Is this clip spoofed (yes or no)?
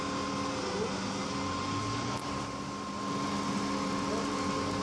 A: no